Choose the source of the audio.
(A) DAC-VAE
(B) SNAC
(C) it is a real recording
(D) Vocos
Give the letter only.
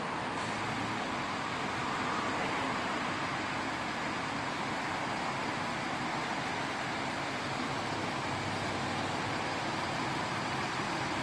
C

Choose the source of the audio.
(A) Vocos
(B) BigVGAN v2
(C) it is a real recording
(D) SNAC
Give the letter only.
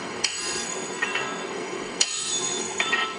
D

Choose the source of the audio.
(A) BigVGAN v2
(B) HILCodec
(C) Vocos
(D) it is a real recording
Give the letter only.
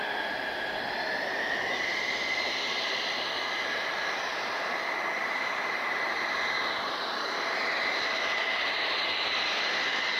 A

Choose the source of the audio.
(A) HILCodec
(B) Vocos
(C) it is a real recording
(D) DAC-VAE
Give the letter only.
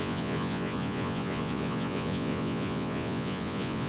B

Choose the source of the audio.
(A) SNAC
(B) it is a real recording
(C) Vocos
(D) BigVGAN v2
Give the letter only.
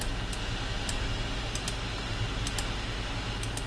B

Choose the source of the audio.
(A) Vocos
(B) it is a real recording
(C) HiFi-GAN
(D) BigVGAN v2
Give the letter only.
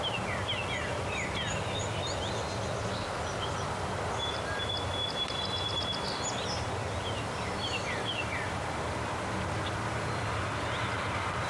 B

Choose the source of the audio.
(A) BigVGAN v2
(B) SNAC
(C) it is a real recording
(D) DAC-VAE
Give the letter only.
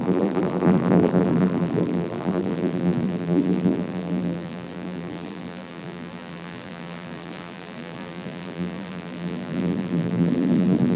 A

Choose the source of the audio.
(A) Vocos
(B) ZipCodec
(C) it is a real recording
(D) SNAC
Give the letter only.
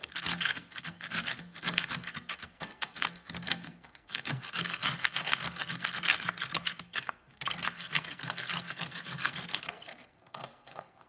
D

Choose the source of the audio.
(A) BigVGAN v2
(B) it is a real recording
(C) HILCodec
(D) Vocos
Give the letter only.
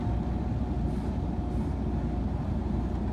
B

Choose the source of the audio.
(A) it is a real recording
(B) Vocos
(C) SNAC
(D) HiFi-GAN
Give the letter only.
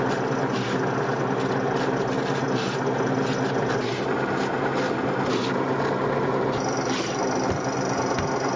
A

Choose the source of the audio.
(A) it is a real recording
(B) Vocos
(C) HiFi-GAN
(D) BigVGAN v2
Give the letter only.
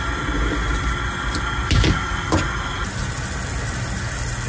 A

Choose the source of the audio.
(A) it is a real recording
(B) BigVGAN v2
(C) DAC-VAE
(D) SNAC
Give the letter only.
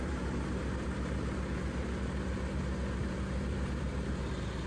A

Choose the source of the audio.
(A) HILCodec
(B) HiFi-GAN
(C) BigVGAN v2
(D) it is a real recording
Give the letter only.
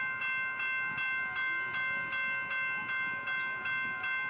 D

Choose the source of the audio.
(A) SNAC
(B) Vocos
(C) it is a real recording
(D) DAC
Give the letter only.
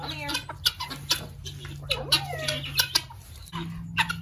C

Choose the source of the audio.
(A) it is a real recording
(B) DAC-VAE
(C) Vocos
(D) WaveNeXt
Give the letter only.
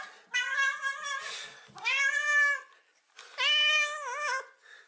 A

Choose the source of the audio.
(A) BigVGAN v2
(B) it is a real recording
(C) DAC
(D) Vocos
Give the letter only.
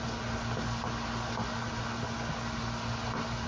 B